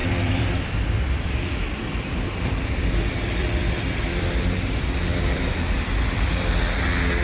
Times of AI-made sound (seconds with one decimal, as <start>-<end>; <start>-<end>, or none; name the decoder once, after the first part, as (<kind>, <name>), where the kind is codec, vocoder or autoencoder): 0.0-3.0 (vocoder, BigVGAN v2); 3.4-6.6